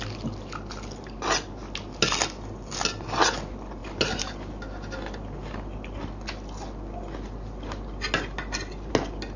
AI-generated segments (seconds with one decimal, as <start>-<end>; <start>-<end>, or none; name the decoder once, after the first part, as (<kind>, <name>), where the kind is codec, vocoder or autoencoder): none